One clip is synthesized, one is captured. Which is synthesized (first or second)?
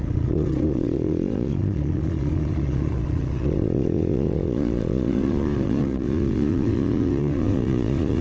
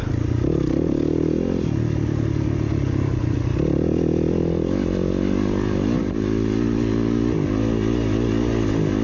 first